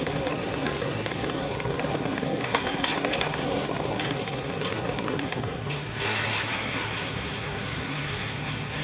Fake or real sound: fake